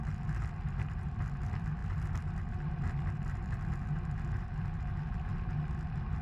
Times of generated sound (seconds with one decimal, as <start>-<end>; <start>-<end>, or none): none